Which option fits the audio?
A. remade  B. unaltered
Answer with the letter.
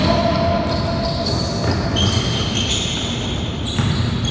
B